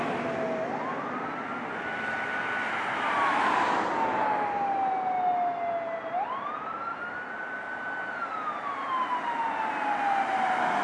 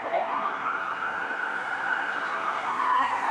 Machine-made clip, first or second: second